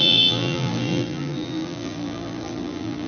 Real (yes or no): no